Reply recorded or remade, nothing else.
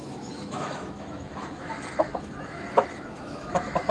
remade